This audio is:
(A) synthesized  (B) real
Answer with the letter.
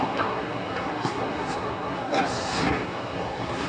A